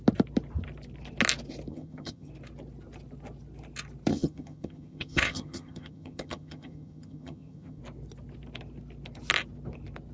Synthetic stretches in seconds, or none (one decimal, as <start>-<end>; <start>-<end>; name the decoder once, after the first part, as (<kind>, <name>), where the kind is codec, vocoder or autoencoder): 1.7-2.3 (vocoder, HiFi-GAN); 4.1-7.8